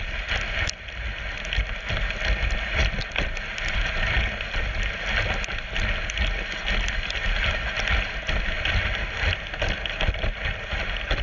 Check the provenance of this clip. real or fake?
real